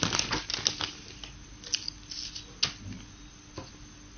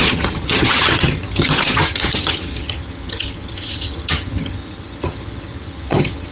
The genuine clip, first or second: first